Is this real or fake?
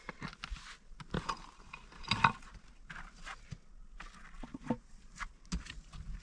real